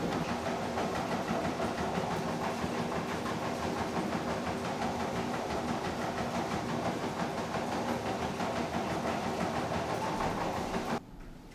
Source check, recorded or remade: remade